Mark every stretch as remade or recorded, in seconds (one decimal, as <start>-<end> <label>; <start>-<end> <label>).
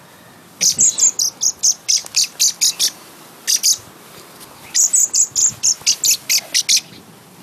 0.0-7.4 recorded